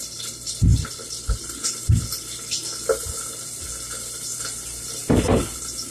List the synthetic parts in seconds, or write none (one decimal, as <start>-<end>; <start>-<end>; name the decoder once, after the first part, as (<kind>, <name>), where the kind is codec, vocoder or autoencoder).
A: none